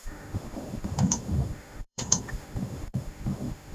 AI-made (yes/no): yes